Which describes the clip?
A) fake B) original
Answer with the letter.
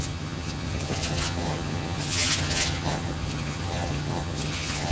A